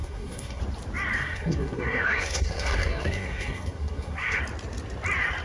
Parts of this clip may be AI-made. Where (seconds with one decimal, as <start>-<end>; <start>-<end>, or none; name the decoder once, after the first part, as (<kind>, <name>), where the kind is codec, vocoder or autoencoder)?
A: 0.0-0.6 (codec, SNAC); 1.2-4.4